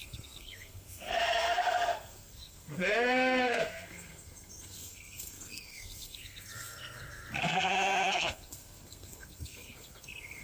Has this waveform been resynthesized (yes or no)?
yes